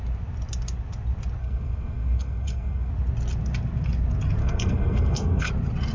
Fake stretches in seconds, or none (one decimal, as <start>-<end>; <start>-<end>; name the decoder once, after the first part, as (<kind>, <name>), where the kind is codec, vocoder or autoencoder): 1.4-2.9 (codec, SNAC); 4.4-5.5